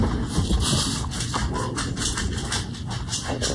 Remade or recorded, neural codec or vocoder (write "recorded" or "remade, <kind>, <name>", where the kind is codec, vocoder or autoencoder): recorded